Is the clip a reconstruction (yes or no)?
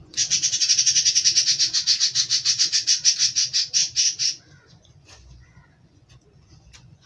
yes